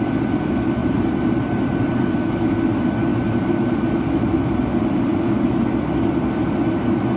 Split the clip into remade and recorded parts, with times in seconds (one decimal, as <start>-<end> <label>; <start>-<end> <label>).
0.0-0.8 recorded; 0.8-1.6 remade; 1.6-3.1 recorded; 3.1-3.7 remade; 3.7-7.2 recorded